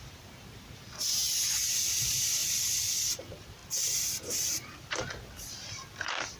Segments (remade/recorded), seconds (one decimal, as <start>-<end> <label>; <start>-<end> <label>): 0.0-2.4 remade; 2.4-3.2 recorded; 3.2-3.6 remade; 3.6-4.2 recorded; 4.2-6.4 remade